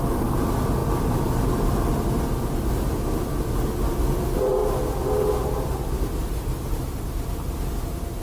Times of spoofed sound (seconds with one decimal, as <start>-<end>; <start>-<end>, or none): none